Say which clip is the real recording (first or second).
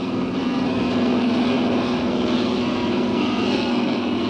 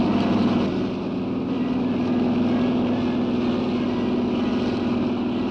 second